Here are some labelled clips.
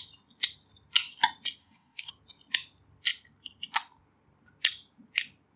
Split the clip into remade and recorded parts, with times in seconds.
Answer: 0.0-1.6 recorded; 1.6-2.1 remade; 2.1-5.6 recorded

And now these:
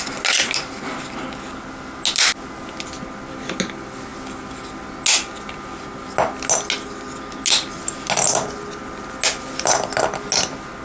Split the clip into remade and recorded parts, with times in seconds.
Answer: 0.0-10.8 recorded

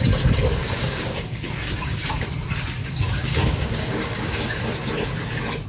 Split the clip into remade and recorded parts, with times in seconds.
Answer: 0.0-0.6 recorded; 0.6-2.1 remade; 2.1-2.8 recorded; 2.8-4.6 remade; 4.6-5.7 recorded

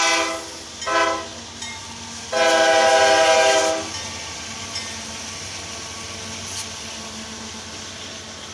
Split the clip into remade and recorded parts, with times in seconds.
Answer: 0.0-8.5 recorded

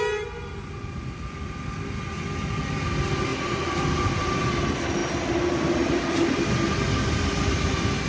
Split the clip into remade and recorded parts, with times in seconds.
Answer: 0.0-8.1 recorded

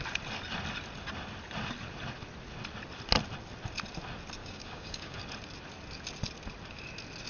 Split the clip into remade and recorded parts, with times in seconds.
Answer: 0.0-4.4 recorded; 4.4-5.2 remade; 5.2-7.3 recorded

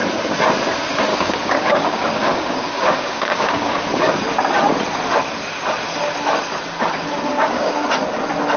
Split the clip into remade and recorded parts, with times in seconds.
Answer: 0.0-1.1 recorded; 1.1-4.2 remade; 4.2-7.3 recorded; 7.3-7.9 remade; 7.9-8.6 recorded